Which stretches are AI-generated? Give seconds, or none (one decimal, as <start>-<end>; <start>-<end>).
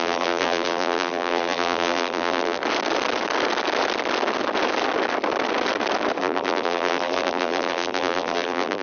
0.0-2.6; 6.2-8.8